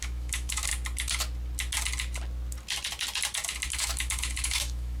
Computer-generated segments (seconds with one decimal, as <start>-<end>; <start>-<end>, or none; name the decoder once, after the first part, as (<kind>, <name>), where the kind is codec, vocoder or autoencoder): 0.0-0.7 (autoencoder, DAC-VAE); 3.7-5.0